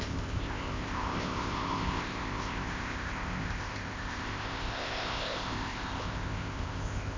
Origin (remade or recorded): remade